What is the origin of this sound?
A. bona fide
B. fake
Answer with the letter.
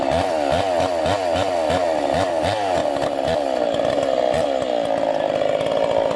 A